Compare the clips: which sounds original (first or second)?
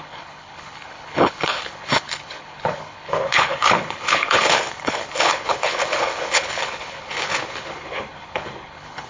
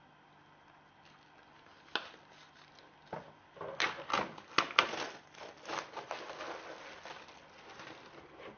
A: second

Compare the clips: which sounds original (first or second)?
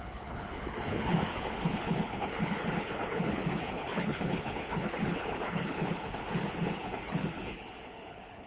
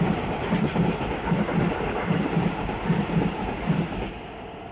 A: second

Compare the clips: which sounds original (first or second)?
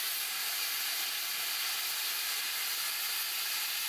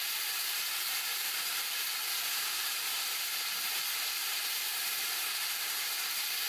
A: first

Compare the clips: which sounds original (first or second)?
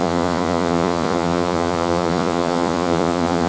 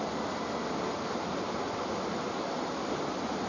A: second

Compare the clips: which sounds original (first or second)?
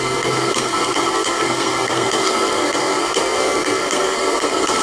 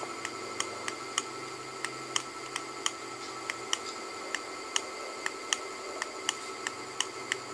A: second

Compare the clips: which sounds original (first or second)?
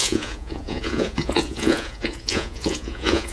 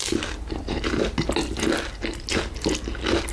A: second